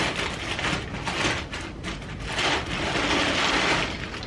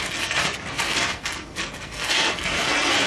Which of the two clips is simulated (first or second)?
second